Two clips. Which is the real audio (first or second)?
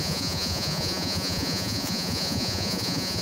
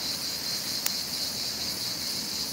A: second